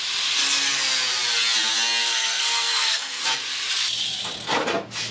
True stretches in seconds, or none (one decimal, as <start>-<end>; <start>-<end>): 0.0-2.0; 3.2-5.1